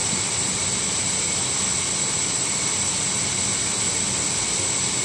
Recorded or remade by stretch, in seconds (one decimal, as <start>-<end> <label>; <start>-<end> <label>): 0.0-3.0 remade; 3.0-5.0 recorded